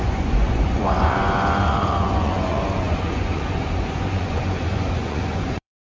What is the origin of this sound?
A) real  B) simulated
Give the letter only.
B